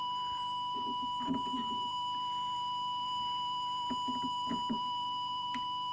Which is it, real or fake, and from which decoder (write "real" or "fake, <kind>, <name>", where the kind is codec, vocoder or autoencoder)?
fake, vocoder, BigVGAN v2